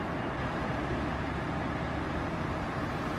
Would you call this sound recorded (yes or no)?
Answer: yes